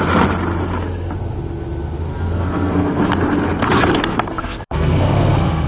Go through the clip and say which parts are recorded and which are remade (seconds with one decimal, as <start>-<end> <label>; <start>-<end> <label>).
0.0-2.1 recorded; 2.1-3.0 remade; 3.0-4.4 recorded; 4.4-5.7 remade